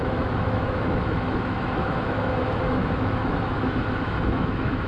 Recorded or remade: remade